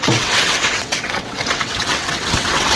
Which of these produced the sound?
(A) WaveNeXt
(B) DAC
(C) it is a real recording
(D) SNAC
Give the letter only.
A